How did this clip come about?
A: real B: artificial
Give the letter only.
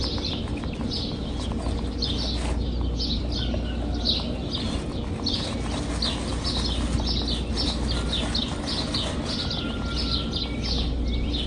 A